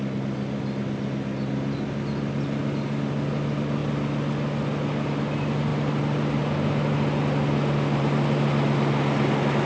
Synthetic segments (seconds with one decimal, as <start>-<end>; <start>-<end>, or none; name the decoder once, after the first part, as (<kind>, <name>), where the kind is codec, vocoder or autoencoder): none